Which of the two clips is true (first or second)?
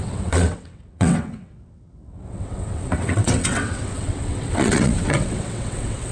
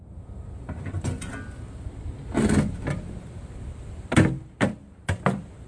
second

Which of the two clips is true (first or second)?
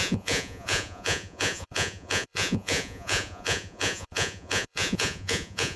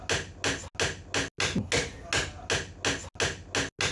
second